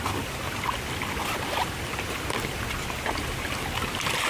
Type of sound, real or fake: real